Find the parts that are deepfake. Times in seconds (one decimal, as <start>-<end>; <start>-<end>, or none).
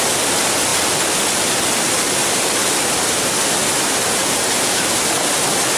2.2-3.3